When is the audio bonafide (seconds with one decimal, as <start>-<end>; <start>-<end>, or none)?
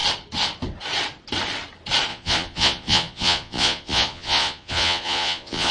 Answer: 0.0-2.1